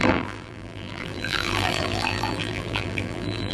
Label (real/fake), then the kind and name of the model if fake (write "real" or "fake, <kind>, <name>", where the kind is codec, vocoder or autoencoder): fake, vocoder, BigVGAN v2